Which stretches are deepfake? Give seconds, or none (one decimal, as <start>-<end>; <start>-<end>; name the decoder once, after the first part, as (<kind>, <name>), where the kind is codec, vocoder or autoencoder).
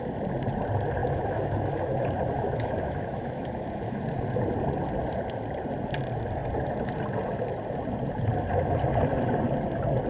1.0-4.0 (autoencoder, DAC-VAE)